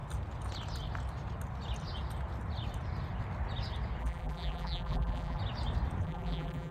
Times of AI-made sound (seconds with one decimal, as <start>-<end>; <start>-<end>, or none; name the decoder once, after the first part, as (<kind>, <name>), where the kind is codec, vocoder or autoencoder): 4.0-5.4 (vocoder, BigVGAN v2); 6.0-6.7